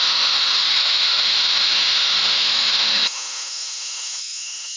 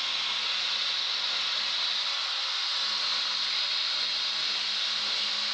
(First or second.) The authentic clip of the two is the second